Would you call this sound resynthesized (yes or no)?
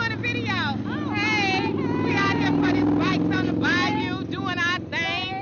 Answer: no